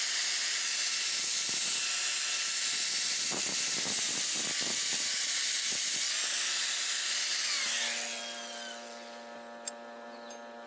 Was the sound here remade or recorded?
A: recorded